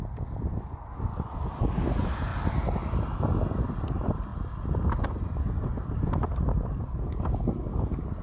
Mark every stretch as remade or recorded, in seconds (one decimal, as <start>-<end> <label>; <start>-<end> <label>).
0.0-8.2 recorded